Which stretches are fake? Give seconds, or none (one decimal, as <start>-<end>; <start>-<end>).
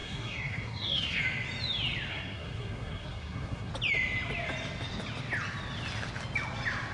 0.0-1.2; 2.1-3.7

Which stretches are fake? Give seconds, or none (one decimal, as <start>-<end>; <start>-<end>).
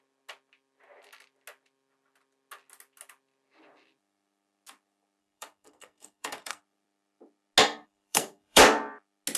5.2-6.6; 7.6-8.6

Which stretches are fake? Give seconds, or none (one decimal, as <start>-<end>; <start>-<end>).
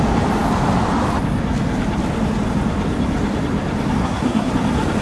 4.0-4.5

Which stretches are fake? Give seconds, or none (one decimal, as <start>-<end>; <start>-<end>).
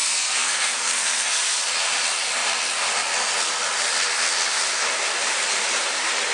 0.0-1.6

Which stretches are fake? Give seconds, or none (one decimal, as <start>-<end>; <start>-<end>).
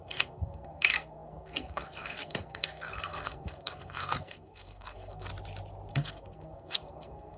0.0-5.3; 5.9-7.4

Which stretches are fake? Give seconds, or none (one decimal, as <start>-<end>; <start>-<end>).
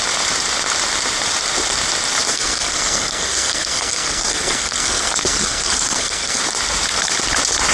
2.3-6.4